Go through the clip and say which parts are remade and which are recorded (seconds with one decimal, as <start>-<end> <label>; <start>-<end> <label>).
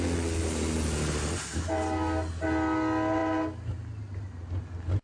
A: 0.0-5.0 recorded